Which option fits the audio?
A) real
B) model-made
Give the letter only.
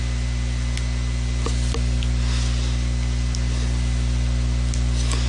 A